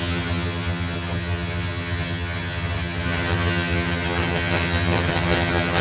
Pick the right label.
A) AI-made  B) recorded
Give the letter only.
A